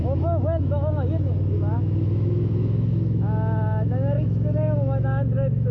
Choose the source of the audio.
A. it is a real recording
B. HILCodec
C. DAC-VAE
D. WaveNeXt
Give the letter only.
C